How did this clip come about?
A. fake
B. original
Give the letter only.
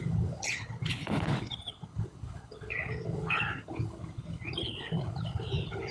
A